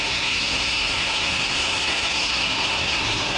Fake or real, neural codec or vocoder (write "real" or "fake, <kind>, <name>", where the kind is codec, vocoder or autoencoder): fake, codec, SNAC